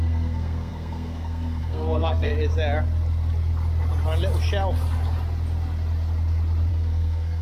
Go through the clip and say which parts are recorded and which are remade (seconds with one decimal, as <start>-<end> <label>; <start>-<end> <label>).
0.0-2.3 remade; 2.3-6.7 recorded; 6.7-7.4 remade